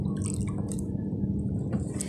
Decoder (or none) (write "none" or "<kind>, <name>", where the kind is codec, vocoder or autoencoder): none